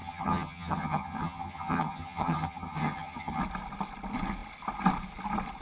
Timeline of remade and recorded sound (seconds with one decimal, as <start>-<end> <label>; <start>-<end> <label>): 0.0-3.4 remade; 3.4-5.6 recorded